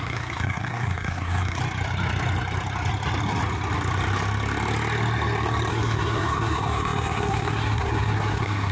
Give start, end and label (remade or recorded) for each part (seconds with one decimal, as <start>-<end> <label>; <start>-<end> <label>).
0.0-1.6 remade; 1.6-5.7 recorded; 5.7-8.7 remade